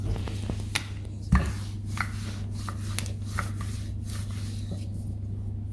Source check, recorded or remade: recorded